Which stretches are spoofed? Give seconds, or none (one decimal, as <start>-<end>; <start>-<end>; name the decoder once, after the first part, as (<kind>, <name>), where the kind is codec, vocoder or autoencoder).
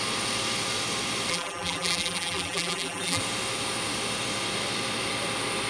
1.3-3.2 (vocoder, BigVGAN v2)